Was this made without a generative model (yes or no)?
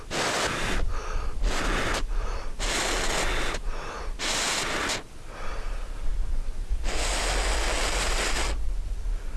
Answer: yes